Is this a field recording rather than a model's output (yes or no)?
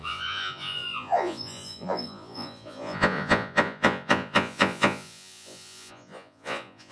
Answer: no